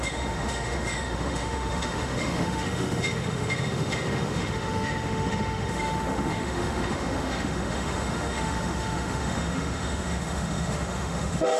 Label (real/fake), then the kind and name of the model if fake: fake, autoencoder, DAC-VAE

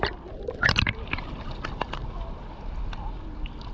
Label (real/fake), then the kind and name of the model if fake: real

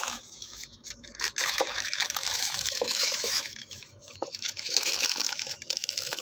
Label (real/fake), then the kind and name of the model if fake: fake, autoencoder, DAC-VAE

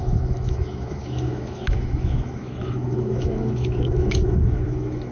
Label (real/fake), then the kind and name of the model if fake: fake, autoencoder, DAC-VAE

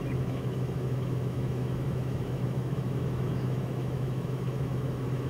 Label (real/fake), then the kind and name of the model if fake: fake, autoencoder, DAC-VAE